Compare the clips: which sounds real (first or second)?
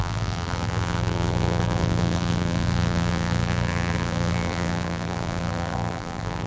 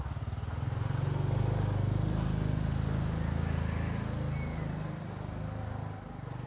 second